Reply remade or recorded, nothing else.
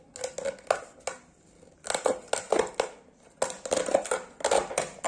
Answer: recorded